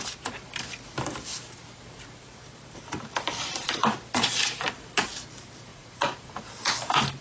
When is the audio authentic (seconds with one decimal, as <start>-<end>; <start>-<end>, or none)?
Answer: 0.0-5.7; 6.4-7.2